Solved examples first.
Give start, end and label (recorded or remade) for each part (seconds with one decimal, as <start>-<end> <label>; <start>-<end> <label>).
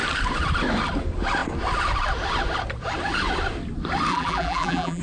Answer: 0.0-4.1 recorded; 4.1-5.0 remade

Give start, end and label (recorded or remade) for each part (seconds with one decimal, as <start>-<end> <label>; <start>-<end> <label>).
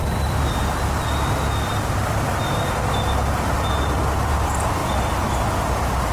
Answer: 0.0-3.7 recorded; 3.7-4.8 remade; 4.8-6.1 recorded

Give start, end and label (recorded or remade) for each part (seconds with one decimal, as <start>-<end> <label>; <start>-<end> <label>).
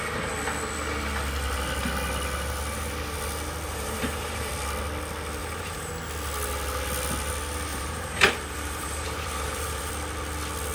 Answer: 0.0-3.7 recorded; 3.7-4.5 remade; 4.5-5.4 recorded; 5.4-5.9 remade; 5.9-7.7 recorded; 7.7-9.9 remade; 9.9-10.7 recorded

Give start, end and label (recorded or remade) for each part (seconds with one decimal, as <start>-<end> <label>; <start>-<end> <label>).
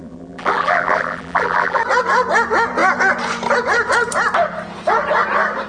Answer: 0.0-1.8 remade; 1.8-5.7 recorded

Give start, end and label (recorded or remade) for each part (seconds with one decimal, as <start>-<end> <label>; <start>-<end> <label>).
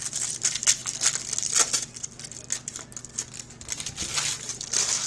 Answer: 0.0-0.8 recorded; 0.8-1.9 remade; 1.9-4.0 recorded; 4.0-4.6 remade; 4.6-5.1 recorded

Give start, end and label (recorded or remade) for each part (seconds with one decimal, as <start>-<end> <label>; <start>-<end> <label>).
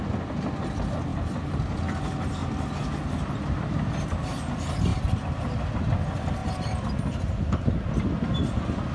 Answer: 0.0-6.4 recorded; 6.4-8.0 remade; 8.0-8.9 recorded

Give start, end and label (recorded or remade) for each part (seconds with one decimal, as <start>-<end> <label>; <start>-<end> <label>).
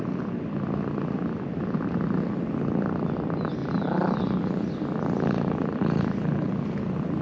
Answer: 0.0-3.6 recorded; 3.6-6.8 remade; 6.8-7.2 recorded